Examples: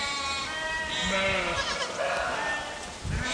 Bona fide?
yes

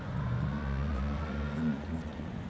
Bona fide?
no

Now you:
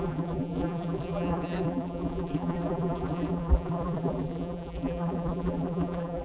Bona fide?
no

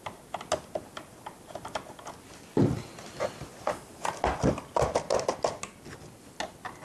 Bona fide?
yes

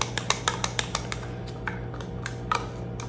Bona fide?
yes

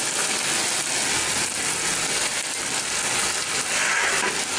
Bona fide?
yes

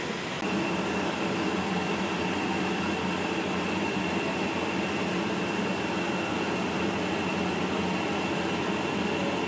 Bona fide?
yes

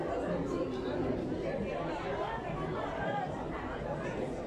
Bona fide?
yes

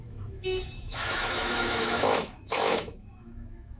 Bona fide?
no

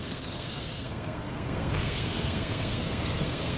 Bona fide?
no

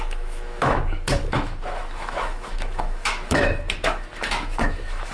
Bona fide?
no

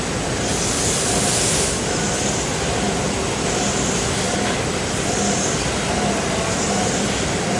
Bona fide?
yes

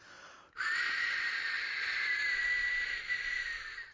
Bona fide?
yes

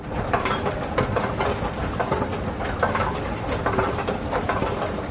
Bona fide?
yes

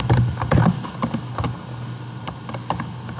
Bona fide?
yes